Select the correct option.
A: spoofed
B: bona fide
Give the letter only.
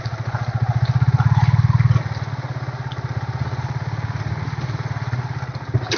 B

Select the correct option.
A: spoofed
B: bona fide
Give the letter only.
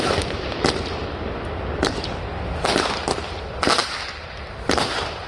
B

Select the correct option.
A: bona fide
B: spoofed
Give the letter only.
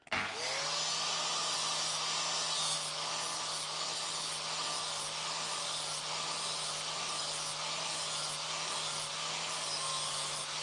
A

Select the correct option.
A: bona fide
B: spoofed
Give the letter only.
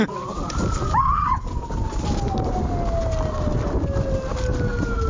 A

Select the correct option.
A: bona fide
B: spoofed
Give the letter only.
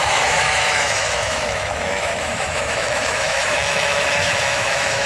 B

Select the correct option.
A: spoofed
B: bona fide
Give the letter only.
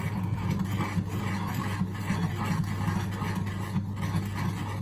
B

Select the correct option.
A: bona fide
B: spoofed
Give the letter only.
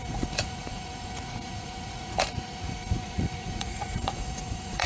B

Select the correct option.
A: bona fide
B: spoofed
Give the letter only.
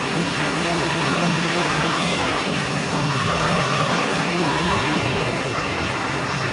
B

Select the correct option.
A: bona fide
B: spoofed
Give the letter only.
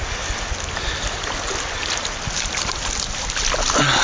A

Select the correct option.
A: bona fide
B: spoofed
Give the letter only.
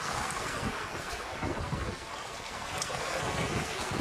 B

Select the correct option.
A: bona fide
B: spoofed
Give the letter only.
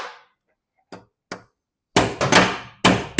A